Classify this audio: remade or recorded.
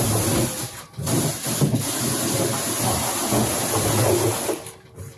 recorded